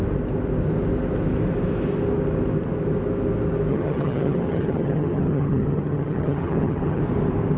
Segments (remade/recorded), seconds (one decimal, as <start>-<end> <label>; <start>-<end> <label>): 0.0-3.7 recorded; 3.7-7.0 remade; 7.0-7.6 recorded